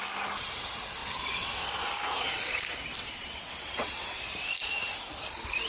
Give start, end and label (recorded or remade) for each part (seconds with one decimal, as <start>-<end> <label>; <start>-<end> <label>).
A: 0.0-1.0 recorded; 1.0-1.6 remade; 1.6-3.0 recorded; 3.0-4.2 remade; 4.2-5.7 recorded